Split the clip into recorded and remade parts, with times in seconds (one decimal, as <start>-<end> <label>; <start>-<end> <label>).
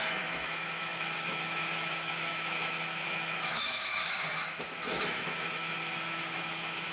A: 0.0-6.9 remade